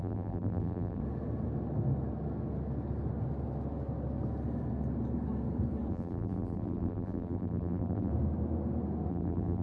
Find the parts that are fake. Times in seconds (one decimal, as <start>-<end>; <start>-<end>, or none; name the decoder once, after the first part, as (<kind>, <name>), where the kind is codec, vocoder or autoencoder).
0.0-1.0 (vocoder, BigVGAN v2); 5.9-8.1; 9.1-9.6